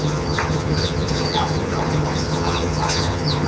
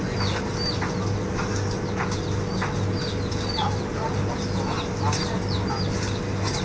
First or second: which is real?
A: second